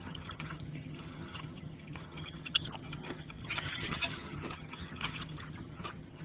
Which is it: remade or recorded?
remade